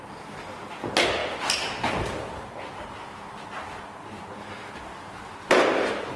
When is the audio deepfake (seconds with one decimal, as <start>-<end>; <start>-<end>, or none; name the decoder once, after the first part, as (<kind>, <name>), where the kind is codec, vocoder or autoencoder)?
none